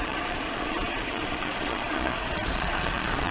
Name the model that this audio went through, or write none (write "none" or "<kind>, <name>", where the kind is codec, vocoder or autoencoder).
vocoder, Vocos